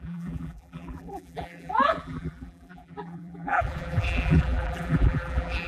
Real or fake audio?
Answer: fake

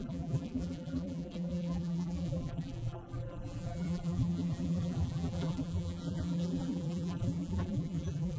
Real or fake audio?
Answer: fake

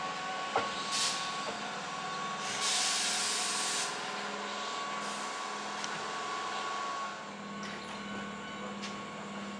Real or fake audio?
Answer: real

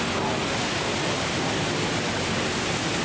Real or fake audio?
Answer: real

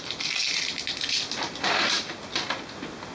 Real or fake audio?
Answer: real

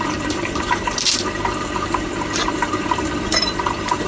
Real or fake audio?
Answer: fake